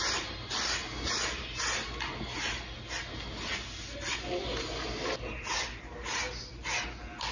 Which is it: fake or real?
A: real